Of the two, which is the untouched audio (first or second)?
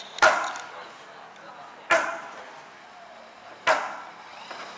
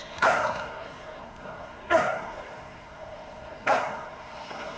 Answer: first